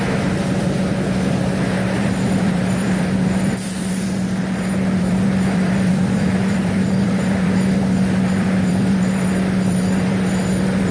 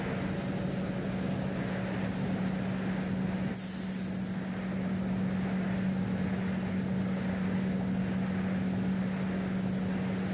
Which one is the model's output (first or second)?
first